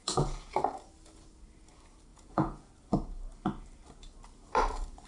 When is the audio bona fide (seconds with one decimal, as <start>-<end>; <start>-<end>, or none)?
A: 0.6-2.1; 2.7-5.1